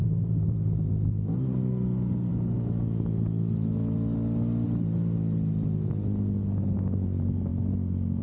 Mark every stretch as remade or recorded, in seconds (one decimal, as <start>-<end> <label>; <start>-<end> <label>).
0.0-0.9 remade; 0.9-8.2 recorded